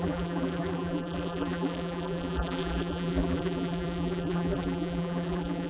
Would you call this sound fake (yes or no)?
yes